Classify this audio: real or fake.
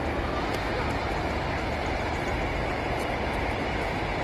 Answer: real